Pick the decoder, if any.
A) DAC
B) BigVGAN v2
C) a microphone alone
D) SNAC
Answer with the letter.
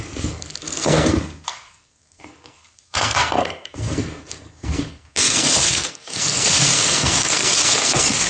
D